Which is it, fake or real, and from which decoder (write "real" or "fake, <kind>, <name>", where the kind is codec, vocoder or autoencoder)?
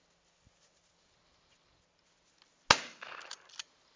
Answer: real